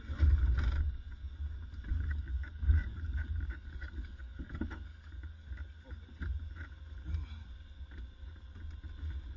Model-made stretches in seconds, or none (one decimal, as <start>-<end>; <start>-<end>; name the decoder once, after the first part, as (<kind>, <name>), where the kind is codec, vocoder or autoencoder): 1.9-5.5 (codec, DAC)